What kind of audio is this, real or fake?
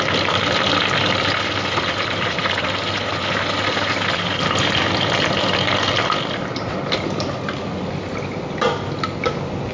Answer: real